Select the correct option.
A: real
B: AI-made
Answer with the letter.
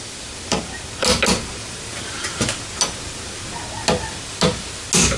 A